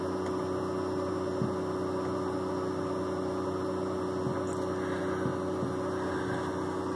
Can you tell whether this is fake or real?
real